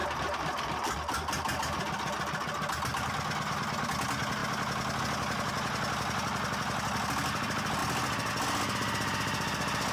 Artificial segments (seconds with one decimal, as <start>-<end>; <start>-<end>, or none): none